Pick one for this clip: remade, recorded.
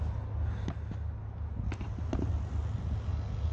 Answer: recorded